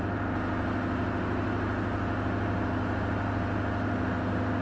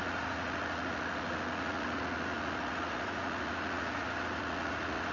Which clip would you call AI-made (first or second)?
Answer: second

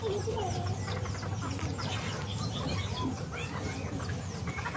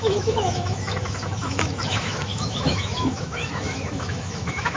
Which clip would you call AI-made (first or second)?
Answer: second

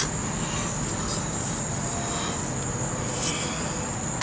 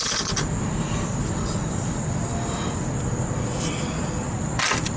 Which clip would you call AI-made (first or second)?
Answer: second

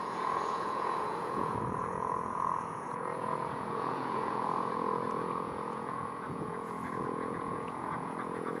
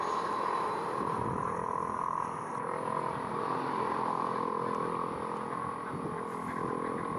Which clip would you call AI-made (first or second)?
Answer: first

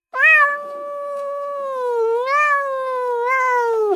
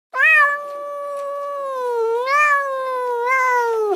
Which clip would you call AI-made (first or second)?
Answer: first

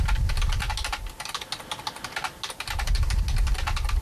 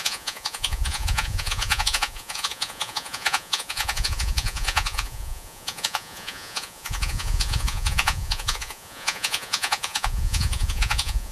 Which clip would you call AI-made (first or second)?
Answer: second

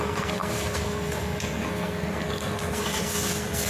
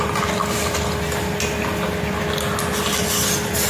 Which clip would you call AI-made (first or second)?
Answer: first